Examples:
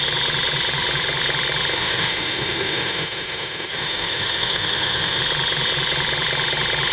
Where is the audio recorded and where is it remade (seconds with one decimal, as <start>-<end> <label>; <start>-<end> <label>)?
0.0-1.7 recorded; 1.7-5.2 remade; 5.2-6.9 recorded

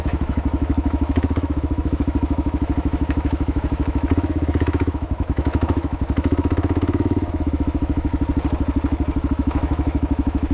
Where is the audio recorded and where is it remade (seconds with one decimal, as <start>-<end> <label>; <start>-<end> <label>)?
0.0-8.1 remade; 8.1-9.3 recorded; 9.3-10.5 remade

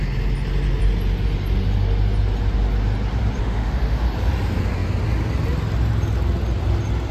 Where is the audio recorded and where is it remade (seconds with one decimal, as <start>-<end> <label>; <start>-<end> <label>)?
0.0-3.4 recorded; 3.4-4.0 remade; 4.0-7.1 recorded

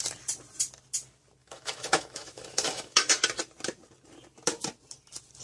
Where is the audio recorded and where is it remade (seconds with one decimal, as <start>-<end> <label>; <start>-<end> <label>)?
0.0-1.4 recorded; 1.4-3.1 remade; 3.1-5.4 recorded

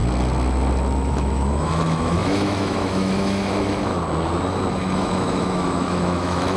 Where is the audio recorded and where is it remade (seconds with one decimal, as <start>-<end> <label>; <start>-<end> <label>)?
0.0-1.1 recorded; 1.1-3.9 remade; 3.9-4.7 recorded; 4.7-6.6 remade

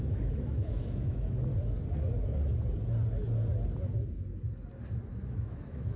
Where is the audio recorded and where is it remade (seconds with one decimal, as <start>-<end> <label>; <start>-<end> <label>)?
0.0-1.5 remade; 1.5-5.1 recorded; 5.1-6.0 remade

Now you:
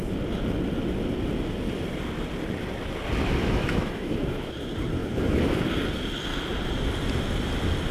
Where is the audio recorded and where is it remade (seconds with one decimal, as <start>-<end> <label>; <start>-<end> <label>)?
0.0-3.4 recorded; 3.4-4.5 remade; 4.5-5.0 recorded; 5.0-5.7 remade; 5.7-7.9 recorded

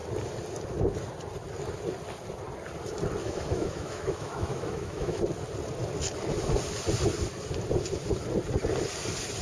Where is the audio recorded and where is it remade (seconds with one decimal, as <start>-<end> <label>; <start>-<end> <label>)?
0.0-3.2 recorded; 3.2-5.2 remade; 5.2-9.4 recorded